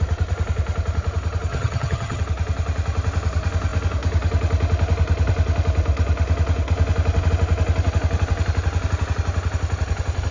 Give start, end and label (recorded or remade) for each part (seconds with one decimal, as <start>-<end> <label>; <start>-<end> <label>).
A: 0.0-1.5 recorded; 1.5-2.2 remade; 2.2-10.3 recorded